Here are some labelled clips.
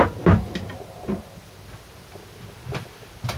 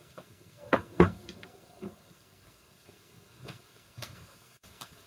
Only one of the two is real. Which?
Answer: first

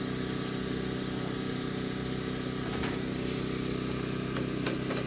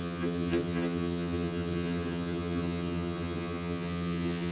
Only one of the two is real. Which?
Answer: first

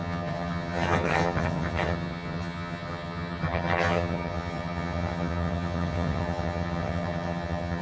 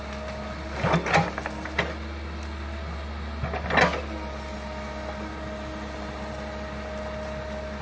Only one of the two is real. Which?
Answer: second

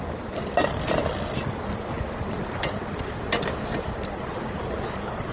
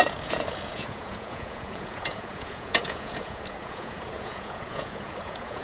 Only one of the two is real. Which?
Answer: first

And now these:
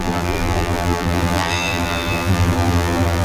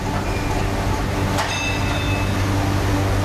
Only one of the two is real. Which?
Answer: second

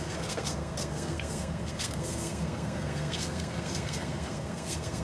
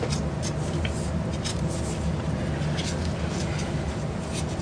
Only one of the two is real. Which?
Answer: second